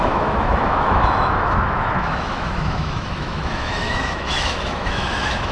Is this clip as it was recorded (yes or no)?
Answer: no